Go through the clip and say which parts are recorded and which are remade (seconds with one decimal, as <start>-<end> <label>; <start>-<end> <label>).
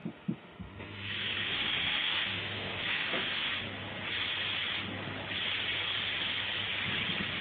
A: 0.0-3.5 remade; 3.5-7.4 recorded